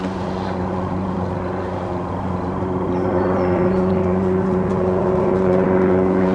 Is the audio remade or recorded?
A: remade